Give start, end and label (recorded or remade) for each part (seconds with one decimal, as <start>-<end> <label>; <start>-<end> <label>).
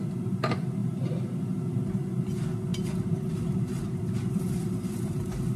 0.0-2.7 recorded; 2.7-5.6 remade